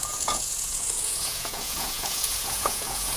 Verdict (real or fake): fake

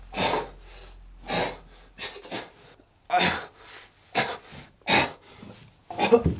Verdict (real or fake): real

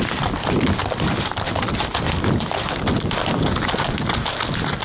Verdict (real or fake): real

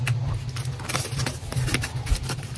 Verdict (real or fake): real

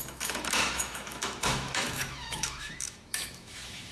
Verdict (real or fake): fake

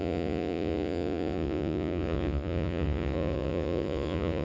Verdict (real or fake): fake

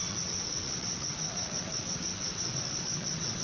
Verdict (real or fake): fake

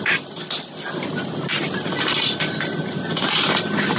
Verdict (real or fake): real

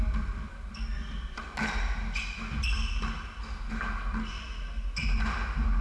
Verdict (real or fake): real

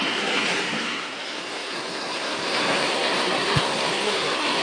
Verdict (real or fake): fake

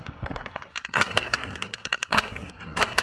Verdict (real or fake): fake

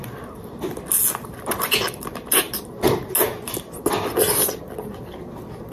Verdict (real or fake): real